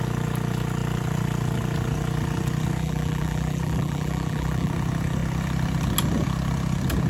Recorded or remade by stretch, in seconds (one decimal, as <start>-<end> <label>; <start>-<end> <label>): 0.0-2.8 recorded; 2.8-4.7 remade; 4.7-7.1 recorded